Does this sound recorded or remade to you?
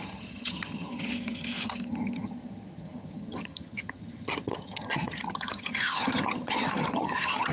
remade